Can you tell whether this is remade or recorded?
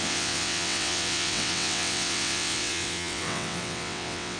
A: remade